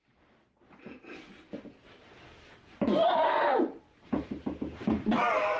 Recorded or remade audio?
remade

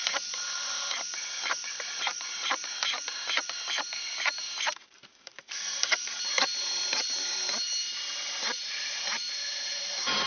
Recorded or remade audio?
remade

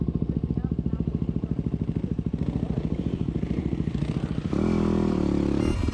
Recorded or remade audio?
remade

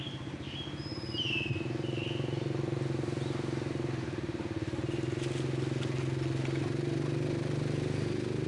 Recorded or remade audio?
recorded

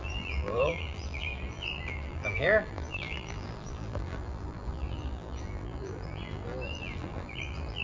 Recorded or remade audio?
remade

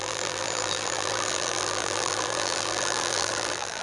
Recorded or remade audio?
remade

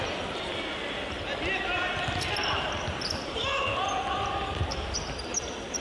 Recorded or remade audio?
recorded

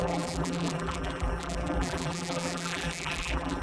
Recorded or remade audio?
remade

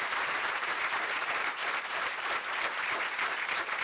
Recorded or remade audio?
remade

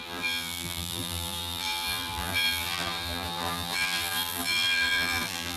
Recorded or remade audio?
remade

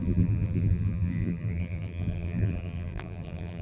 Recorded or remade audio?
remade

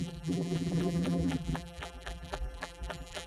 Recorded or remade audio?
remade